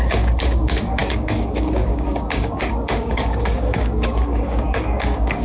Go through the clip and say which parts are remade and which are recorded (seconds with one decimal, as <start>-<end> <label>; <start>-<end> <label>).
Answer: 0.0-5.4 remade